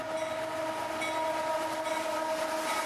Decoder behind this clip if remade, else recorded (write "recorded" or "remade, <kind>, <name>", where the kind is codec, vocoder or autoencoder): recorded